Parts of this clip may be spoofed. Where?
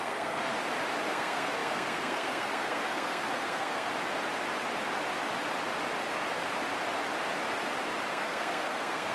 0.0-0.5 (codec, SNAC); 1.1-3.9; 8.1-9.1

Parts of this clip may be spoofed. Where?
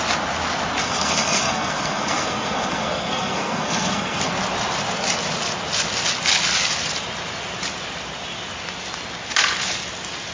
0.8-4.3 (codec, SNAC)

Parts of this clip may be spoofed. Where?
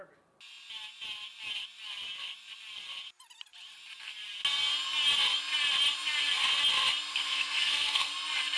7.1-8.1 (codec, SNAC)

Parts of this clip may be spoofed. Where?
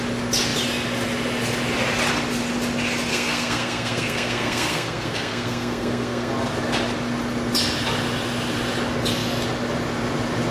3.1-6.3 (codec, SNAC)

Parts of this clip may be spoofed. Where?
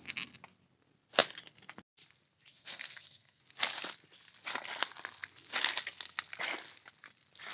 2.5-3.4 (codec, SNAC)